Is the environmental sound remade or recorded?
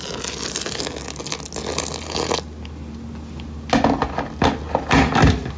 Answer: recorded